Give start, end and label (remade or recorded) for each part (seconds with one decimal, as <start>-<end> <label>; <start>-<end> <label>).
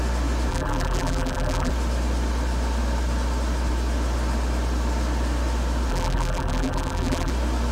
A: 0.0-0.5 recorded; 0.5-1.7 remade; 1.7-5.9 recorded; 5.9-7.3 remade; 7.3-7.7 recorded